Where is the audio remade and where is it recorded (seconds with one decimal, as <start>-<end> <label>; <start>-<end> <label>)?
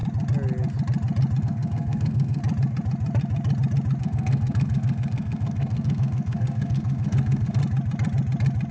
0.0-1.4 recorded; 1.4-2.4 remade; 2.4-4.0 recorded; 4.0-7.6 remade; 7.6-8.7 recorded